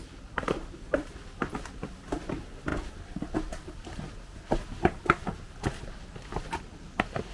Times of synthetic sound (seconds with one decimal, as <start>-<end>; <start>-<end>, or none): none